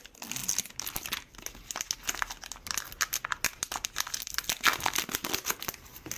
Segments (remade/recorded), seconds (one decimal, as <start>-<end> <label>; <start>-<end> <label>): 0.0-6.2 recorded